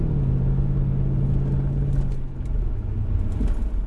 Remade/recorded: recorded